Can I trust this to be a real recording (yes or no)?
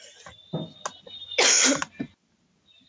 yes